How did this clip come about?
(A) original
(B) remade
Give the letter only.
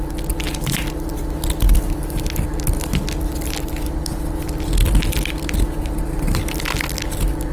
A